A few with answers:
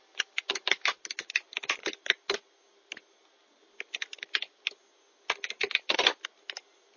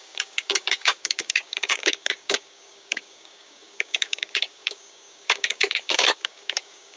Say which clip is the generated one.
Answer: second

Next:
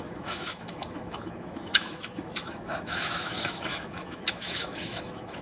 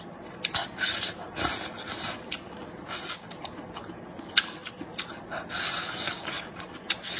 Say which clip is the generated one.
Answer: first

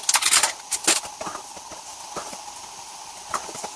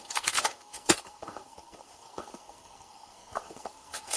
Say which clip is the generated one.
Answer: second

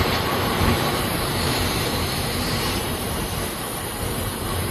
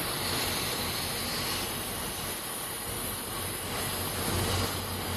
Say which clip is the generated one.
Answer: first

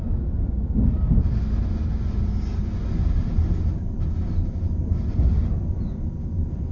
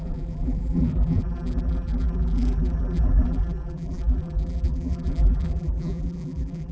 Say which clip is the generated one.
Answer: second